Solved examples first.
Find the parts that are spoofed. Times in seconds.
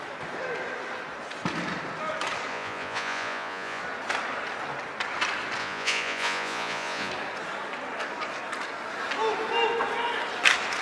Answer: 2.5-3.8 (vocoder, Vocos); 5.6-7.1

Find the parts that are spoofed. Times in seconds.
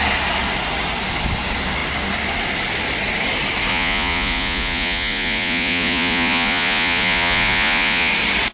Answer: 3.7-8.1 (vocoder, Vocos)